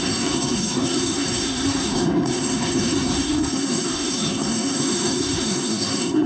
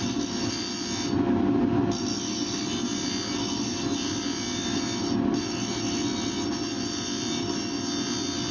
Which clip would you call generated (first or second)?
first